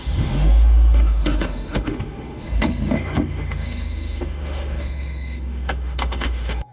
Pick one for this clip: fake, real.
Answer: fake